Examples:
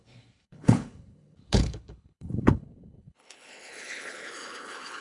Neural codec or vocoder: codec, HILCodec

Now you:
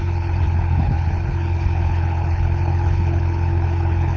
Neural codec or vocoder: codec, HILCodec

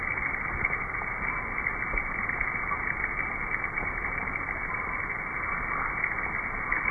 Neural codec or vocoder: none